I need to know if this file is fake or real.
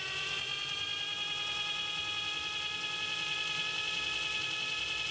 real